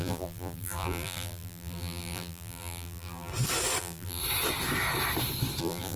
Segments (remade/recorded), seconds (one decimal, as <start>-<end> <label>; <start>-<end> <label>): 0.0-3.3 remade; 3.3-3.8 recorded; 3.8-4.2 remade; 4.2-5.6 recorded; 5.6-6.0 remade